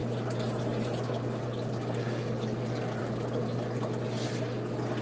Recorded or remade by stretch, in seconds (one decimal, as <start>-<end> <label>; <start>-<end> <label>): 0.0-5.0 recorded